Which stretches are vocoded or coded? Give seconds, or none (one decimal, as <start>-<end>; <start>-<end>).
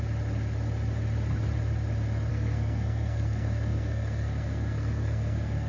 2.3-5.7